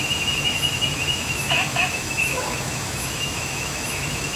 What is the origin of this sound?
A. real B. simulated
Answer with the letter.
B